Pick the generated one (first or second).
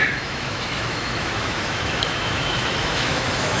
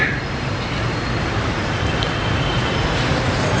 first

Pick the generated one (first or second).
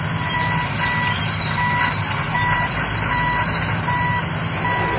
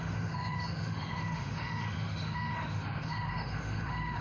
second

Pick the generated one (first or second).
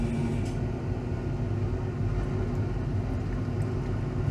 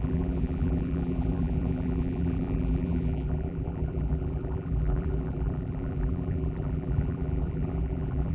second